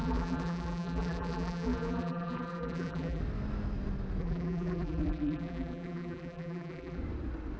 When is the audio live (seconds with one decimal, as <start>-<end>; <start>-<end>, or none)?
3.2-4.2; 7.0-7.6